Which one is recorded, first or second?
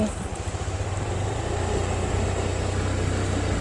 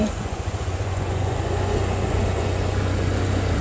first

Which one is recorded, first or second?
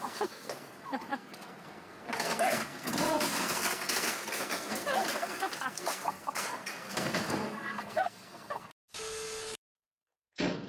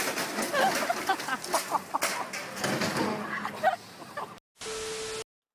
second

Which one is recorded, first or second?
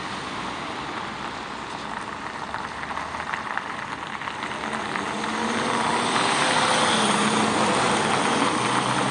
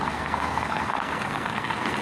first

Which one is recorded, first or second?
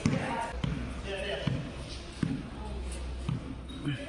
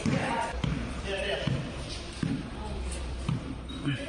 first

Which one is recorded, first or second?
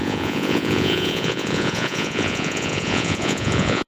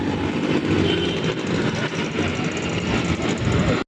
second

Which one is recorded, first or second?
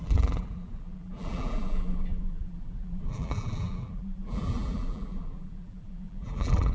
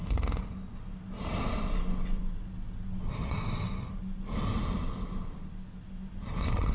second